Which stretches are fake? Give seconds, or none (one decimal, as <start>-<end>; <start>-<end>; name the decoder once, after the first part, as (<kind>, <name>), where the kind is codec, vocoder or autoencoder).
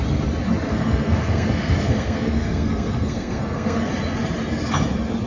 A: 0.7-3.9 (codec, SNAC)